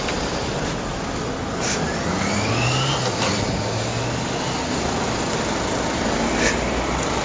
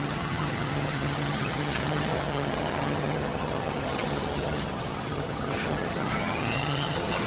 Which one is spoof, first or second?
second